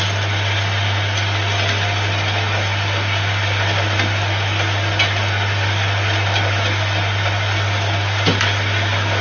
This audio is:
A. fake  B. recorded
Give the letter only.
B